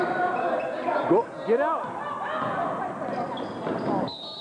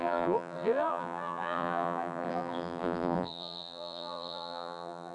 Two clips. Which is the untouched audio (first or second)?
first